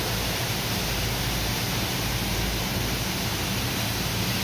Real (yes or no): yes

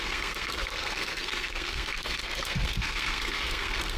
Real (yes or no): no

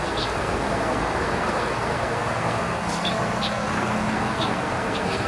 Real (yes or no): no